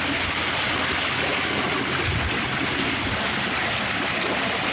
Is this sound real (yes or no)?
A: yes